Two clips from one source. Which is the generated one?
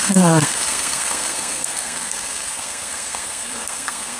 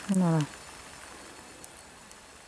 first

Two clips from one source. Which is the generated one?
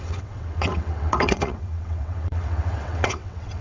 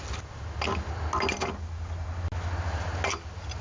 first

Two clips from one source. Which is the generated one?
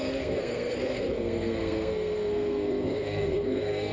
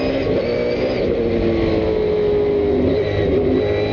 first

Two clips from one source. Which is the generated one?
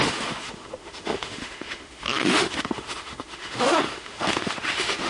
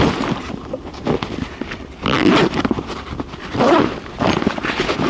first